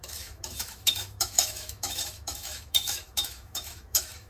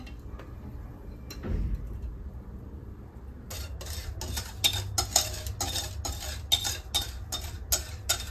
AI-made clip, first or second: first